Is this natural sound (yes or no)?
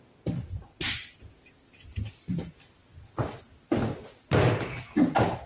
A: yes